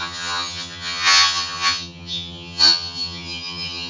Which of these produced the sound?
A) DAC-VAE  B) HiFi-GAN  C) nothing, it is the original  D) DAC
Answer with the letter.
B